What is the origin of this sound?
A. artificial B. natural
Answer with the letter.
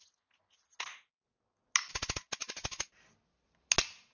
B